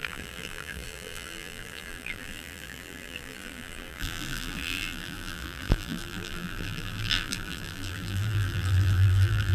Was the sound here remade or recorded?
remade